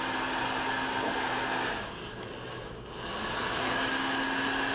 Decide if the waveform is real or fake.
real